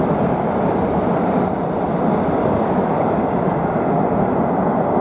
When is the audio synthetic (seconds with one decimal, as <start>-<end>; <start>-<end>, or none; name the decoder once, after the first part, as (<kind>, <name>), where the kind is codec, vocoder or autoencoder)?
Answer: 2.6-3.2 (codec, DAC)